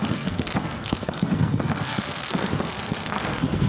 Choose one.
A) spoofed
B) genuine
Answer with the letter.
A